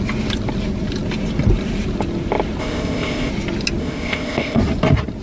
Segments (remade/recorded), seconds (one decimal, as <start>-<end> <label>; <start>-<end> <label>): 0.0-2.6 recorded; 2.6-3.3 remade; 3.3-3.8 recorded; 3.8-4.6 remade; 4.6-5.2 recorded